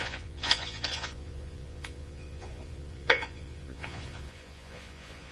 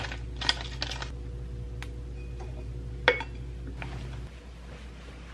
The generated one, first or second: first